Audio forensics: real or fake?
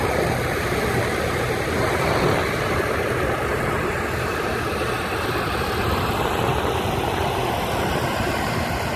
real